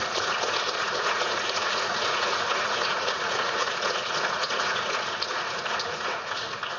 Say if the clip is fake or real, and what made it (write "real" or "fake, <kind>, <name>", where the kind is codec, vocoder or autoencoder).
fake, vocoder, Vocos